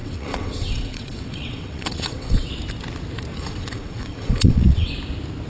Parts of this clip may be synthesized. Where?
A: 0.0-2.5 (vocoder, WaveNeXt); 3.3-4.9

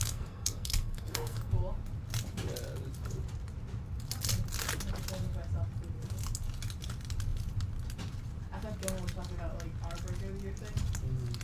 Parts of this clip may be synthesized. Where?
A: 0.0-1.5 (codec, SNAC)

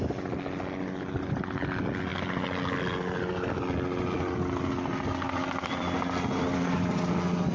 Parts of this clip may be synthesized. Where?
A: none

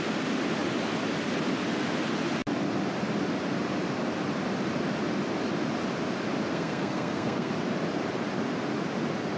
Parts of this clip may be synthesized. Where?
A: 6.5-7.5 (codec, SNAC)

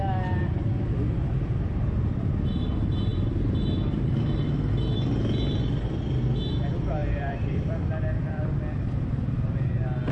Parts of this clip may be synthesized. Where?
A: 7.0-8.4 (vocoder, BigVGAN v2)